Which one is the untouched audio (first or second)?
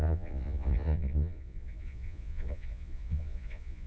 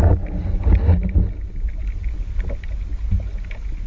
second